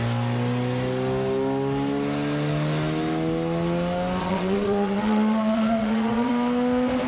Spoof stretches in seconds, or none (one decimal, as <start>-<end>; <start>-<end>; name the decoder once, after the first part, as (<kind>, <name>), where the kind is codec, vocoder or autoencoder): 4.2-6.3 (vocoder, Vocos)